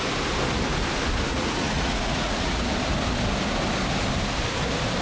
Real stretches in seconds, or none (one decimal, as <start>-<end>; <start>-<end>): 0.0-1.3; 2.6-5.0